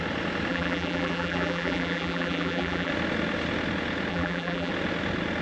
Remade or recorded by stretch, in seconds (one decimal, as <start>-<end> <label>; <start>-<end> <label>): 0.0-0.5 recorded; 0.5-2.9 remade; 2.9-4.1 recorded; 4.1-4.7 remade; 4.7-5.4 recorded